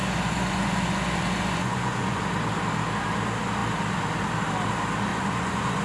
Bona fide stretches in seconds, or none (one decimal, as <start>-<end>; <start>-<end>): 2.2-5.1